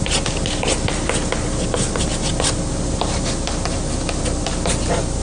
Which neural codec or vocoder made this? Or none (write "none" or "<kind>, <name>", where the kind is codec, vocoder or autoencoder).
none